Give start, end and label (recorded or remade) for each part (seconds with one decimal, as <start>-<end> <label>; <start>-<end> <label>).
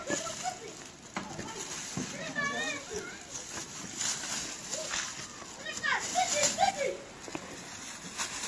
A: 0.0-8.5 recorded